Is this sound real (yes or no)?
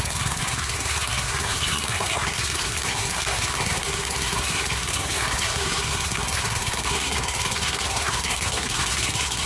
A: no